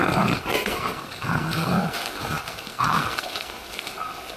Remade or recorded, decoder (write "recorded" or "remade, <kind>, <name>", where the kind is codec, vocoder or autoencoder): remade, codec, SNAC